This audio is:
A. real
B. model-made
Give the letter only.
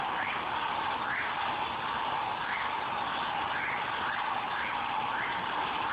A